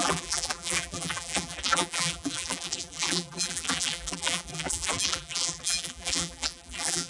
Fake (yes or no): yes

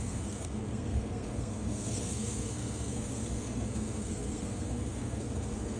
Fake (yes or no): yes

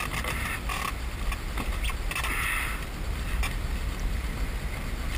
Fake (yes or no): no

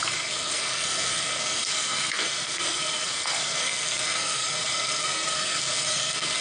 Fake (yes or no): yes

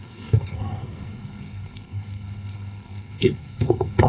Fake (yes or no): yes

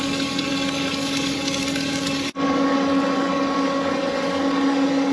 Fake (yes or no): yes